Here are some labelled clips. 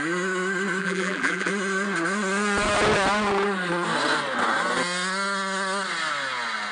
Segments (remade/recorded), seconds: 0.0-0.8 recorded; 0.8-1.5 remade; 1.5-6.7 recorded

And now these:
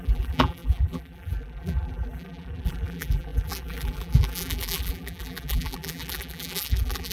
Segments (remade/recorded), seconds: 0.0-7.1 remade

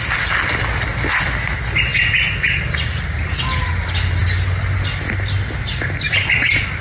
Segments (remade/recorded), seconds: 0.0-6.8 recorded

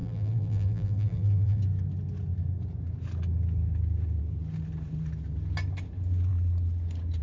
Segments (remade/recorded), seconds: 0.0-1.6 remade; 1.6-7.2 recorded